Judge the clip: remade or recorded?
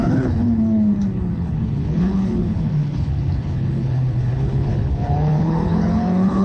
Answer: remade